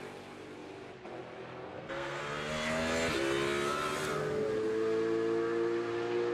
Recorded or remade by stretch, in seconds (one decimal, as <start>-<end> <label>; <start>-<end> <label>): 0.0-1.7 recorded; 1.7-2.2 remade; 2.2-6.3 recorded

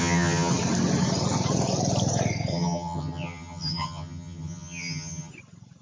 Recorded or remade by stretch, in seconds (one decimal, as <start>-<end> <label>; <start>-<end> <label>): 0.0-0.5 remade; 0.5-2.5 recorded; 2.5-5.3 remade; 5.3-5.8 recorded

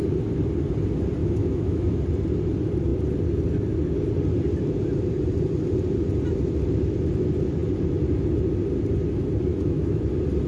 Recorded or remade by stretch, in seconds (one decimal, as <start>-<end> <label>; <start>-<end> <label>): 0.0-1.2 recorded; 1.2-2.0 remade; 2.0-9.5 recorded; 9.5-10.0 remade; 10.0-10.5 recorded

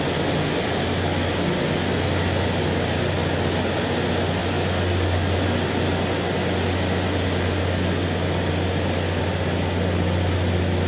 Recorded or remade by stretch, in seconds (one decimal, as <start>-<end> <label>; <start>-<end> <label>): 0.0-10.9 recorded

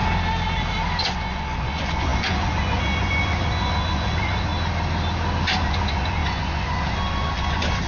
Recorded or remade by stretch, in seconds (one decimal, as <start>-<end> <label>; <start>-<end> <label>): 0.0-1.0 recorded; 1.0-4.5 remade; 4.5-5.6 recorded; 5.6-7.9 remade

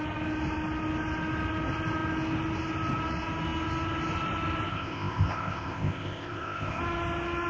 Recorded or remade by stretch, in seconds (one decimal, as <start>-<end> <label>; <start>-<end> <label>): 0.0-4.7 recorded; 4.7-6.8 remade; 6.8-7.5 recorded

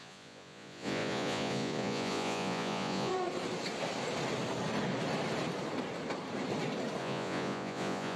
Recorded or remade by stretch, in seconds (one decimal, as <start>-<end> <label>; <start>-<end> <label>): 0.0-3.1 remade; 3.1-7.0 recorded; 7.0-8.2 remade